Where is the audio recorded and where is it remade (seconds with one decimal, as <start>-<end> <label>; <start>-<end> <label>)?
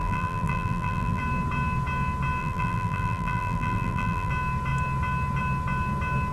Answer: 0.0-1.2 remade; 1.2-2.4 recorded; 2.4-4.3 remade; 4.3-6.3 recorded